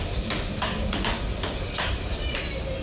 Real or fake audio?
real